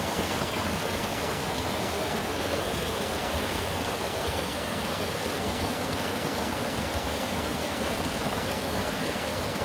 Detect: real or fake fake